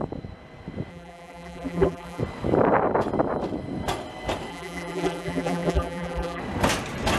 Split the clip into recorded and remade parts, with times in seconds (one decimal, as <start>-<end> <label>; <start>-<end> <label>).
0.0-0.9 recorded; 0.9-2.2 remade; 2.2-4.5 recorded; 4.5-6.4 remade; 6.4-7.2 recorded